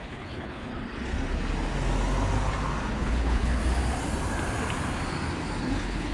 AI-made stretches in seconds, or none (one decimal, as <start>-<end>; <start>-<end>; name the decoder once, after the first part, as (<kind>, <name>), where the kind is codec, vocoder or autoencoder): 0.0-0.7 (codec, HILCodec); 2.9-3.6; 5.6-6.1